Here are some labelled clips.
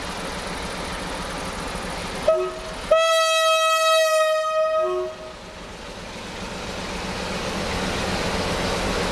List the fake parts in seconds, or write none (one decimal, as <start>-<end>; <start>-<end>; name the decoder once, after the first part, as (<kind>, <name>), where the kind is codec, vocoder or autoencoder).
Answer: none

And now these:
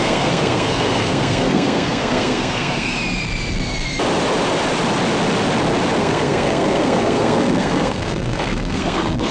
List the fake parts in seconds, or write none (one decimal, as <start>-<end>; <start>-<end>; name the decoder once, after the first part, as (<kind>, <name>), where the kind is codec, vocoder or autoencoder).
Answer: 0.0-2.9 (codec, SNAC); 6.0-9.3

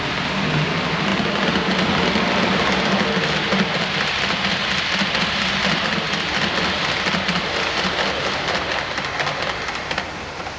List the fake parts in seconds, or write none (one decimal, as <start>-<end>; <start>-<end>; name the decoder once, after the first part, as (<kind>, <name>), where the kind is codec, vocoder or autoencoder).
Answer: none

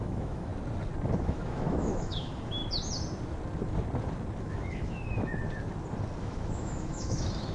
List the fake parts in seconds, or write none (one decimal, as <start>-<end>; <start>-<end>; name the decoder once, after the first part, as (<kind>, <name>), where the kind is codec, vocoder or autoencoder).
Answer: 0.0-0.5 (autoencoder, DAC-VAE); 1.2-2.6; 4.4-5.3; 6.2-7.5